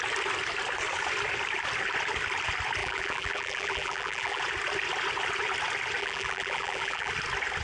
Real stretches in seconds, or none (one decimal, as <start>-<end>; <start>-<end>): 0.0-2.8; 4.4-6.0; 7.1-7.6